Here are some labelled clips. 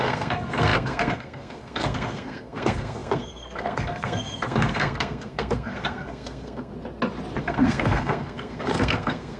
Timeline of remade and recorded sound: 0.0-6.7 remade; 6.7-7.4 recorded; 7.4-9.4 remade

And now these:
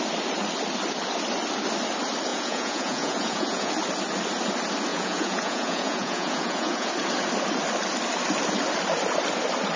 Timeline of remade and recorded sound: 0.0-2.3 recorded; 2.3-3.7 remade; 3.7-4.9 recorded; 4.9-6.9 remade; 6.9-9.8 recorded

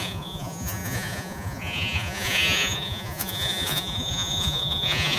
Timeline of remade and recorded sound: 0.0-5.2 remade

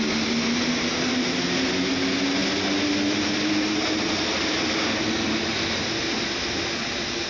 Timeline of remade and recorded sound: 0.0-7.3 recorded

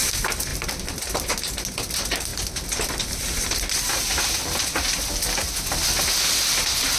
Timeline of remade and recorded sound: 0.0-7.0 recorded

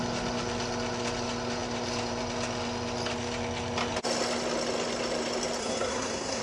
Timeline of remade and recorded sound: 0.0-5.6 recorded; 5.6-6.4 remade

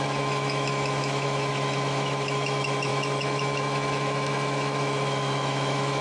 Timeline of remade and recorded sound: 0.0-6.0 remade

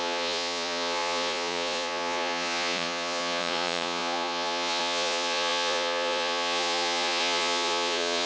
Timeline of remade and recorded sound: 0.0-8.3 remade